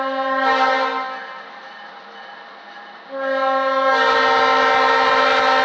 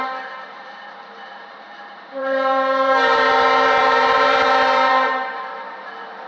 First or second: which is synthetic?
second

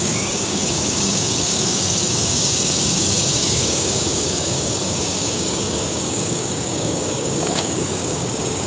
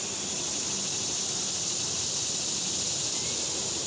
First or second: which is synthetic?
first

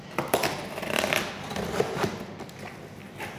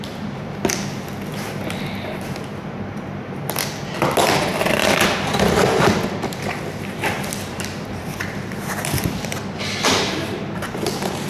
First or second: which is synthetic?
second